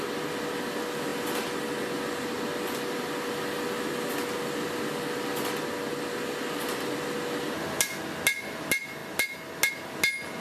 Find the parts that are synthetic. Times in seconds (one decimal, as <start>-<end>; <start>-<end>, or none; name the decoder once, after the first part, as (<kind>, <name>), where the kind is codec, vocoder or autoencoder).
none